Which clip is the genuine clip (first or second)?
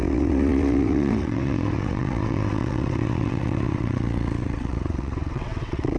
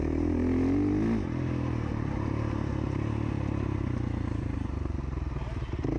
second